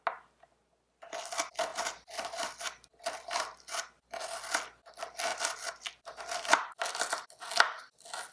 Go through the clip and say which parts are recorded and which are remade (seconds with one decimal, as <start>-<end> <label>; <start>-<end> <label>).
0.0-1.7 recorded; 1.7-4.2 remade; 4.2-5.3 recorded; 5.3-7.1 remade; 7.1-8.3 recorded